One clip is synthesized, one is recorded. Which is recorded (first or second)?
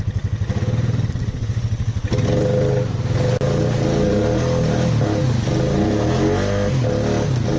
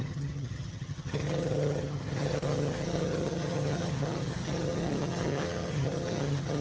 first